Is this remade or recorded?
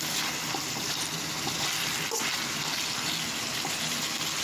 recorded